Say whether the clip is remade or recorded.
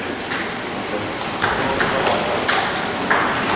recorded